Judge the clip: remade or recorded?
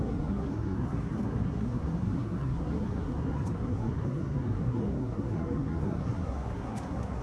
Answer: remade